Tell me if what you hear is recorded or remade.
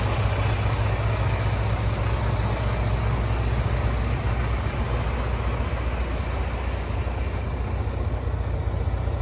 recorded